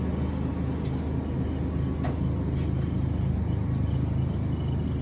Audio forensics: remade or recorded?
recorded